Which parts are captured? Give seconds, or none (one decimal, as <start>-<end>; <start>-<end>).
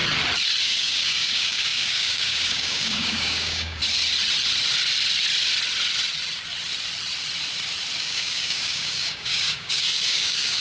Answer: 0.0-0.6; 3.8-8.0